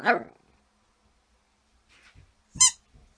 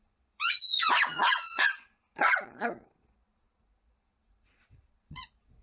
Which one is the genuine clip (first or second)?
first